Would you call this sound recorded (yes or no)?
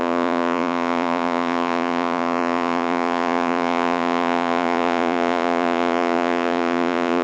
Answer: no